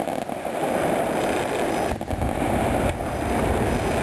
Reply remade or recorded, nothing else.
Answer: recorded